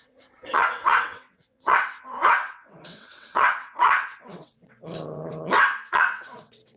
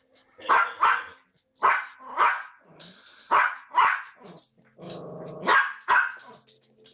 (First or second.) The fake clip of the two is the first